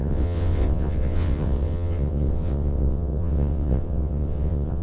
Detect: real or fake fake